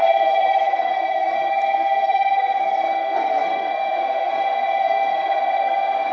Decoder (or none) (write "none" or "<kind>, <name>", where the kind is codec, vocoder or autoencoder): codec, SNAC